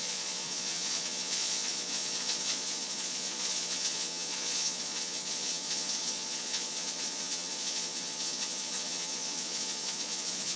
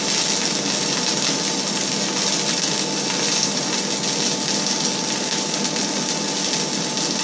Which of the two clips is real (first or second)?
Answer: second